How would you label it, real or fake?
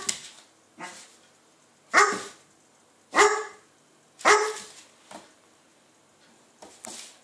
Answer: real